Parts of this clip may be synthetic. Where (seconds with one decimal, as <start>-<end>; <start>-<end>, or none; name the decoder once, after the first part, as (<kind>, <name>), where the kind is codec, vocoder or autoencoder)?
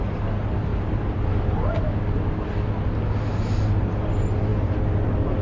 none